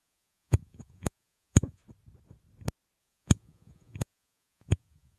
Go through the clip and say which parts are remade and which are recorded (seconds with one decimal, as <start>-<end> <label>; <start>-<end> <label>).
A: 0.0-1.8 remade; 1.8-3.0 recorded; 3.0-5.2 remade